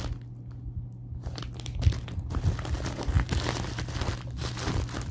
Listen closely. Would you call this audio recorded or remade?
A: recorded